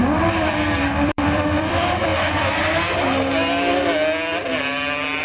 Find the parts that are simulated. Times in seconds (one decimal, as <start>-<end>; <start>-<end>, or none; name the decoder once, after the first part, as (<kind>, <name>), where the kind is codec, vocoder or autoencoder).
0.0-2.1 (vocoder, BigVGAN v2)